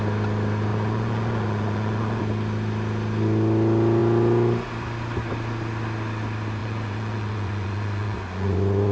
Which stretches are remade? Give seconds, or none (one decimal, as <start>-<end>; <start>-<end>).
0.7-2.2; 6.6-8.9